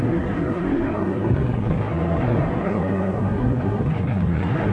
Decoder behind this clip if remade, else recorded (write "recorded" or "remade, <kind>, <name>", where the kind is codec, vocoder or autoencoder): remade, codec, SNAC